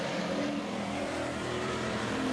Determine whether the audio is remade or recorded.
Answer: remade